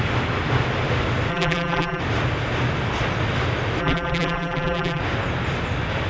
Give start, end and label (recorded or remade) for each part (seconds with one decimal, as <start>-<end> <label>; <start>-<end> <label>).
0.0-1.3 recorded; 1.3-2.0 remade; 2.0-3.8 recorded; 3.8-5.0 remade; 5.0-6.1 recorded